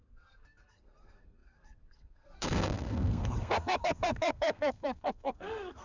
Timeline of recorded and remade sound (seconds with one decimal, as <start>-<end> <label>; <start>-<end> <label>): 0.0-5.8 remade